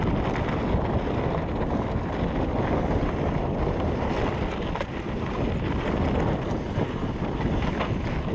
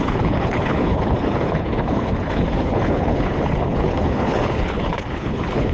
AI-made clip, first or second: second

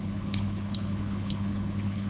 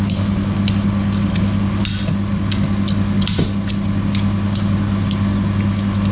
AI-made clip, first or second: first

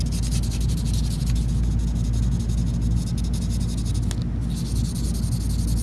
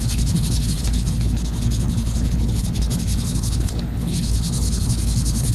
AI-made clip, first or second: second